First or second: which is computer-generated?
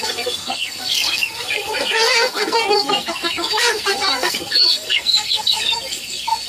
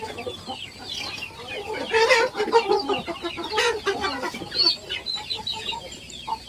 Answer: first